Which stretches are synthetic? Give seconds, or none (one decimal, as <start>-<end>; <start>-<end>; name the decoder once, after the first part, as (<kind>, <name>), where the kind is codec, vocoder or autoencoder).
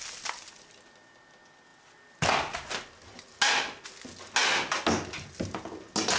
none